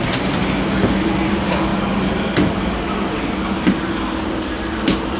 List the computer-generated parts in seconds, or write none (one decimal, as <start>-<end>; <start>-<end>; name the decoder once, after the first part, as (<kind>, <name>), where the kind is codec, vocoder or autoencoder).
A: 0.0-1.7 (vocoder, BigVGAN v2); 4.8-5.2